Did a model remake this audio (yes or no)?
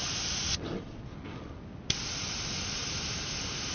no